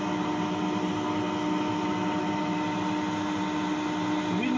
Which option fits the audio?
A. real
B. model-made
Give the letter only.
A